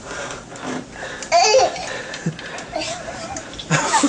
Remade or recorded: recorded